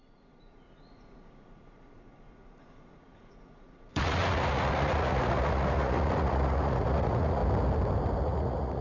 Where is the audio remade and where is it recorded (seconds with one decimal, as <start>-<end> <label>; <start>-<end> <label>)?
0.0-7.4 remade; 7.4-8.2 recorded; 8.2-8.8 remade